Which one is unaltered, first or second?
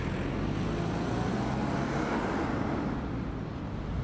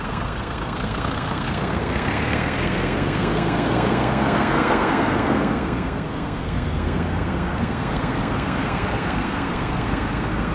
first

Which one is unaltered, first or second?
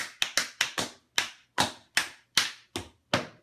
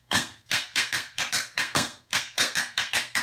first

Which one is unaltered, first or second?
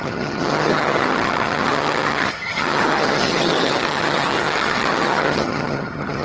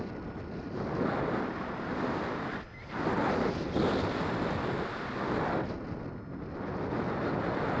second